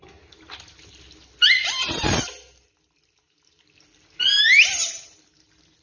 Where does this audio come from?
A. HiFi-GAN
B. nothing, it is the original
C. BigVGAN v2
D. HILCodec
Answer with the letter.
B